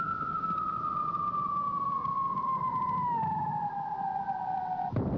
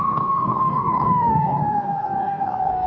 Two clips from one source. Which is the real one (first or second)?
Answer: first